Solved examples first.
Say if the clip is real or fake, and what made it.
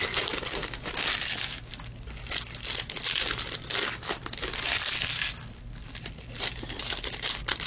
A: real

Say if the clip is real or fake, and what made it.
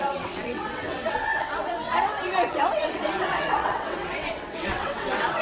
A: fake, vocoder, WaveNeXt